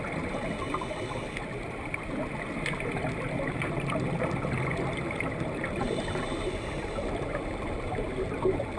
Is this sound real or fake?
real